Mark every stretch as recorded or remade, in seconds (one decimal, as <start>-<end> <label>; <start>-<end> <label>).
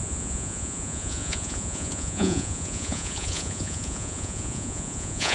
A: 0.0-5.3 remade